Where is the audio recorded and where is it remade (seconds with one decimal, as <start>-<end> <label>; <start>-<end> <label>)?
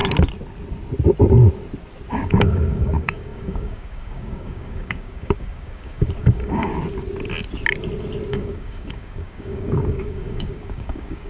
0.0-2.1 recorded; 2.1-6.7 remade; 6.7-8.3 recorded; 8.3-11.3 remade